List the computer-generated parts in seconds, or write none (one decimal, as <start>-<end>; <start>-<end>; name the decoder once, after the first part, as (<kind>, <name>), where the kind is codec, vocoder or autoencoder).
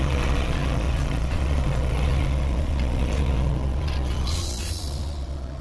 0.0-5.6 (vocoder, Vocos)